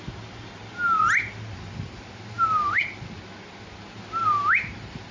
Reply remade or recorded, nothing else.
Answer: recorded